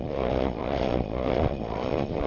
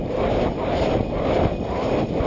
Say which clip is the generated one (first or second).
first